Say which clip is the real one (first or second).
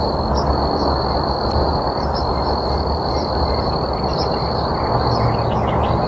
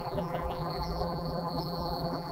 first